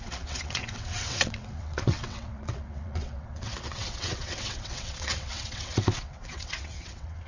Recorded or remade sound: remade